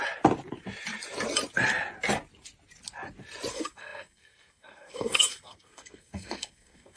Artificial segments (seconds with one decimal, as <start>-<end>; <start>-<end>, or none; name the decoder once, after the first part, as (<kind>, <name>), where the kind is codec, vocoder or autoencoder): 3.5-7.0 (codec, SNAC)